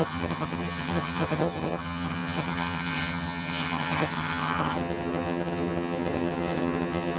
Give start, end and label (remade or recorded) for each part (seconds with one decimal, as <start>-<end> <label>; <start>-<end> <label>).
0.0-7.2 remade